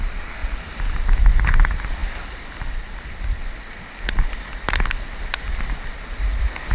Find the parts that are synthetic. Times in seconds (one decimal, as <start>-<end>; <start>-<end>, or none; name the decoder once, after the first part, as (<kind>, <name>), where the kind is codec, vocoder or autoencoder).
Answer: none